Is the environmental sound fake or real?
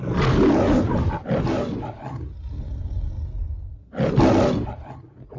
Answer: real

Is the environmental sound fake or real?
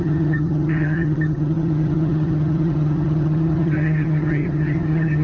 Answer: fake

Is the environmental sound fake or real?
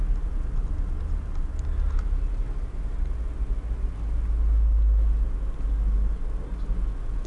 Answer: real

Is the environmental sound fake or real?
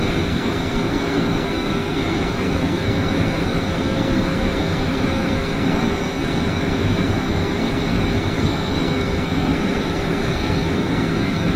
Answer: fake